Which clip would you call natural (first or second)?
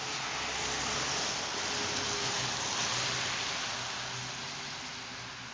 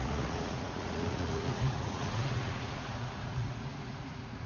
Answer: first